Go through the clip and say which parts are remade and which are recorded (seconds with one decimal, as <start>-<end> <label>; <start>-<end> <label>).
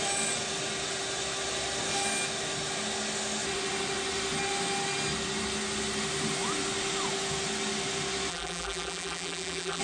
0.0-8.3 recorded; 8.3-9.8 remade